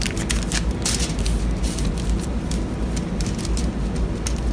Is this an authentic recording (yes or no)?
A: yes